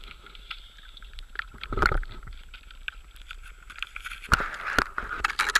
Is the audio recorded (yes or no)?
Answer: yes